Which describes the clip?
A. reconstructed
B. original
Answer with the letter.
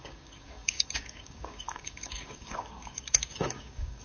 A